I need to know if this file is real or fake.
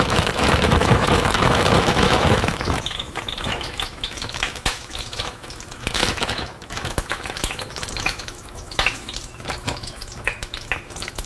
fake